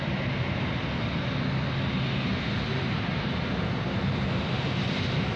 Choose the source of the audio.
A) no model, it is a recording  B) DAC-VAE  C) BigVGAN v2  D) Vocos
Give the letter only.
A